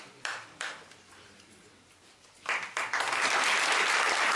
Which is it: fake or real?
fake